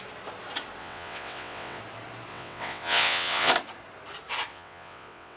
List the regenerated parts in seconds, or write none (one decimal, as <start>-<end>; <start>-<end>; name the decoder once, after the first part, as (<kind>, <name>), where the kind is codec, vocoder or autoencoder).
0.8-1.8 (vocoder, WaveNeXt); 2.3-3.5; 4.5-5.4